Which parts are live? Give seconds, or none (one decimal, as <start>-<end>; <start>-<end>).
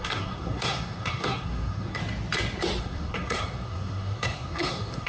2.0-2.8